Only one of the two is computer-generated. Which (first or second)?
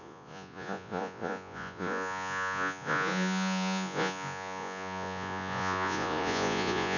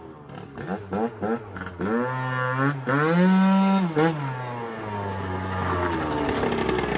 first